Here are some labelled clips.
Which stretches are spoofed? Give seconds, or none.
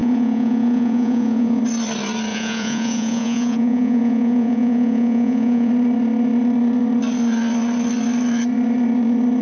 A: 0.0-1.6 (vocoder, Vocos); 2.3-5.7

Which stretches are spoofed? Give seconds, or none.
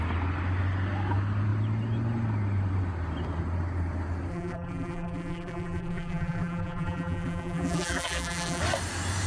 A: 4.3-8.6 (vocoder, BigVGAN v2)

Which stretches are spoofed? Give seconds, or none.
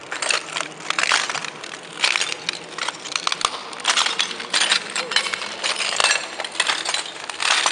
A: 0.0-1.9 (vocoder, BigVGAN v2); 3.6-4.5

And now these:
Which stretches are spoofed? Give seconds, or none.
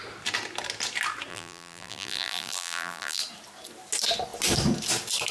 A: 1.3-3.2 (vocoder, BigVGAN v2)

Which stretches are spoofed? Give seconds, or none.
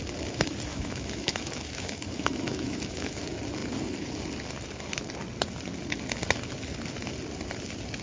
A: 0.7-3.2 (autoencoder, DAC-VAE)